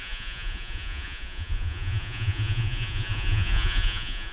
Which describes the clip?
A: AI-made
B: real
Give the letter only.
A